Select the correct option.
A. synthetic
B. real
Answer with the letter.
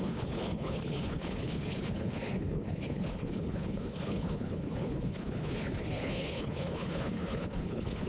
A